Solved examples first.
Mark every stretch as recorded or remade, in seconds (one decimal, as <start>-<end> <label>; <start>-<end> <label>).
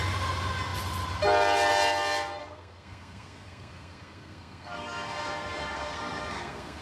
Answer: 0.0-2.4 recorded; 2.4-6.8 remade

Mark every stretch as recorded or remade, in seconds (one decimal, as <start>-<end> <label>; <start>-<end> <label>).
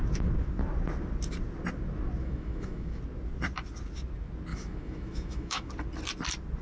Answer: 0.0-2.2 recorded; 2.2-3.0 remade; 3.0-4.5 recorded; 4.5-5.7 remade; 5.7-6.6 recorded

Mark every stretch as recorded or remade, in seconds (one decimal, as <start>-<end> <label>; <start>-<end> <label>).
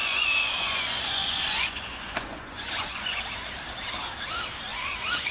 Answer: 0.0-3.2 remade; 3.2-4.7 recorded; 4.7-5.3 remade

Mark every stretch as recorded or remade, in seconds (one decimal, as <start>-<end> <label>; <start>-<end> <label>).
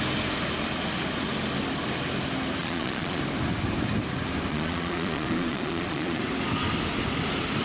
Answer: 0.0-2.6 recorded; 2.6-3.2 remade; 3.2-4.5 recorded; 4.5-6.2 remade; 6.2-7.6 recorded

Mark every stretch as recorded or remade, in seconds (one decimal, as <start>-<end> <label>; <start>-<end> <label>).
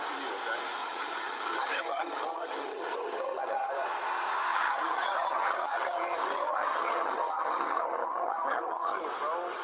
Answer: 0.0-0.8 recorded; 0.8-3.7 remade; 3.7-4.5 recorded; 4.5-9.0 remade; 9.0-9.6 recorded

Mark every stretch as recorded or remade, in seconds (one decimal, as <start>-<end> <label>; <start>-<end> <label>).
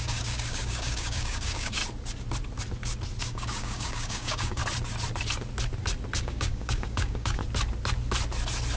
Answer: 0.0-1.8 remade; 1.8-3.2 recorded; 3.2-4.6 remade; 4.6-6.2 recorded; 6.2-7.4 remade; 7.4-8.8 recorded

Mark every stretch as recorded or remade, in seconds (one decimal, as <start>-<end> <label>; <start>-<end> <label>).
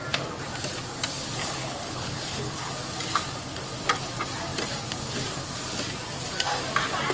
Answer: 0.0-1.4 recorded; 1.4-2.7 remade; 2.7-7.1 recorded